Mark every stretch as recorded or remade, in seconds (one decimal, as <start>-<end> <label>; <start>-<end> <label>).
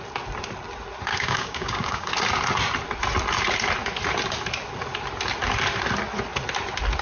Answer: 0.0-1.1 recorded; 1.1-2.1 remade; 2.1-7.0 recorded